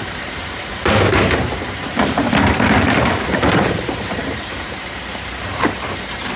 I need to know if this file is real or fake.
fake